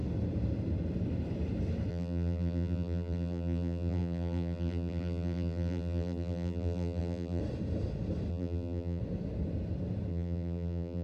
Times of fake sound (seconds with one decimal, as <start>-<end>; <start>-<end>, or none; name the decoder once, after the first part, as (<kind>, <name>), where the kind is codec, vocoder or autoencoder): 1.9-7.4 (vocoder, BigVGAN v2); 8.3-9.0; 10.1-11.0